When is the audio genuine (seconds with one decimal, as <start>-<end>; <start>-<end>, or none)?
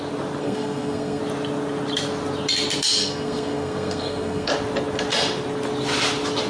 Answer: 0.0-0.4; 1.2-3.0; 4.5-6.5